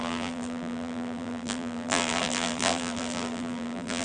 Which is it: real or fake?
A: fake